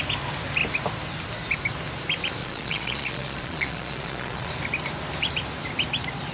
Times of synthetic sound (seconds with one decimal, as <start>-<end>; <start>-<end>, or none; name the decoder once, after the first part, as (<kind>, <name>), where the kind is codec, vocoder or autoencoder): 2.4-4.5 (vocoder, Vocos)